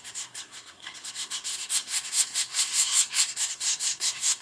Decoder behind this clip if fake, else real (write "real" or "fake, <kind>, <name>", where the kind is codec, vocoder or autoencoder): fake, codec, SNAC